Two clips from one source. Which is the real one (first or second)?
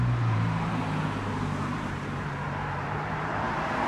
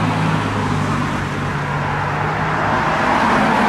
second